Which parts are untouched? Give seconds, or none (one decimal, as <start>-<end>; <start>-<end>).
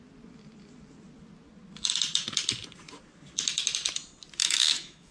0.0-4.4